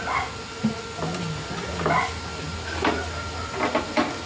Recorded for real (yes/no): yes